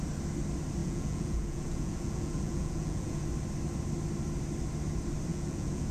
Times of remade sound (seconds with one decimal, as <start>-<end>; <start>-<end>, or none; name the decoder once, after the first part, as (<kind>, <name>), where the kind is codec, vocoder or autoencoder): 0.8-3.2 (vocoder, Vocos); 5.3-5.9